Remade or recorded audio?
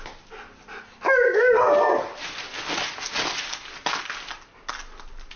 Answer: recorded